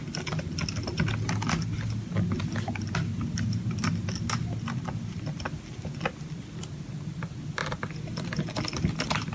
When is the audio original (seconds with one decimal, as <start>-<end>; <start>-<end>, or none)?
0.0-9.3